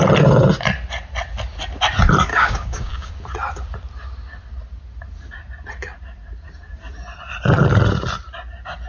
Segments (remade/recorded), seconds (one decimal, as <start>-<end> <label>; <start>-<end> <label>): 0.0-2.3 recorded; 2.3-3.1 remade; 3.1-8.9 recorded